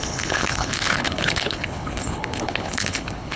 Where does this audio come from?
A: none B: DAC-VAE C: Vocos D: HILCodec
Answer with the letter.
D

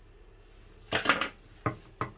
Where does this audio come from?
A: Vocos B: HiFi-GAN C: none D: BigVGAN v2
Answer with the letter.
C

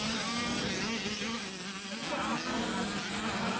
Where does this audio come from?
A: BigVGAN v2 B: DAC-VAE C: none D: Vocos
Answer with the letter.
C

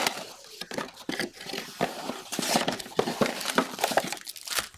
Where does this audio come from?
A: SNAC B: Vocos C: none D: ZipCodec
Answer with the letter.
C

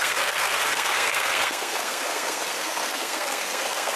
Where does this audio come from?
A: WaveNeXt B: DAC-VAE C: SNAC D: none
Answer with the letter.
C